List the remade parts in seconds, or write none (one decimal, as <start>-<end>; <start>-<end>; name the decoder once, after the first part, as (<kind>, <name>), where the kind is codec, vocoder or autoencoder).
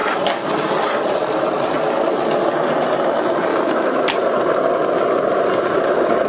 3.5-4.0 (autoencoder, DAC-VAE)